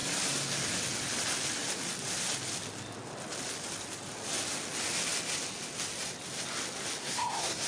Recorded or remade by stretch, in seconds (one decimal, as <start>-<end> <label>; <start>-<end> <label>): 0.0-7.0 recorded; 7.0-7.7 remade